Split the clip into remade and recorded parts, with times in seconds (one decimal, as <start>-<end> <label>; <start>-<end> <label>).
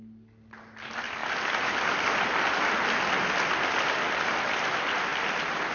0.0-5.7 recorded